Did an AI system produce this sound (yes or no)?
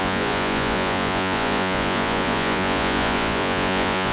yes